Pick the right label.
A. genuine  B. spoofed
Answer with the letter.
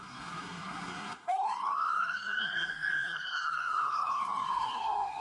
B